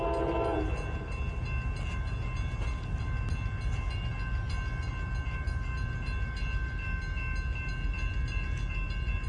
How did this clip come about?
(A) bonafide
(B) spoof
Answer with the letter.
A